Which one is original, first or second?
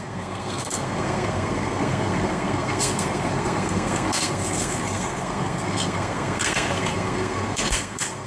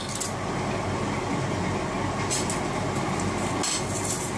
second